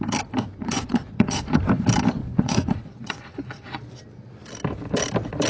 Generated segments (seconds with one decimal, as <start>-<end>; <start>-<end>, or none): 0.6-1.4; 2.2-4.0